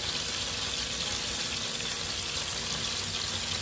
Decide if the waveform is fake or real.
real